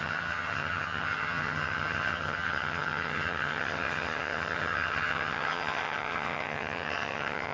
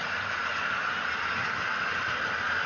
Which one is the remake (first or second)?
first